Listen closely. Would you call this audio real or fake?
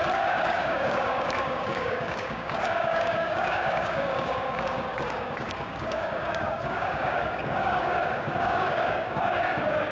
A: fake